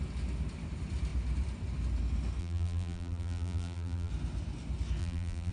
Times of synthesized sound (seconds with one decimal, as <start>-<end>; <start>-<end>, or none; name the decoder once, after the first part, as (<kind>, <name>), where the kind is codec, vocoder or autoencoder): 2.4-4.1 (vocoder, BigVGAN v2); 5.0-5.5